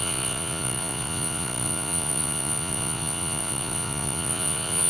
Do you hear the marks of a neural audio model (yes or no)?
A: yes